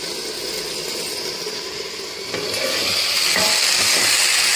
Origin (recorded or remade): recorded